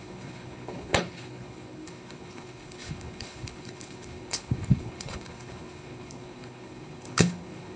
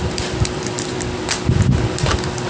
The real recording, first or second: second